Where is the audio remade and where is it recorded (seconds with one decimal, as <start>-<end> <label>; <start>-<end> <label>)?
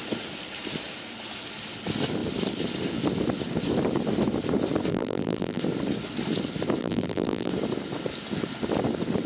0.0-4.9 recorded; 4.9-5.6 remade; 5.6-6.8 recorded; 6.8-7.5 remade; 7.5-9.3 recorded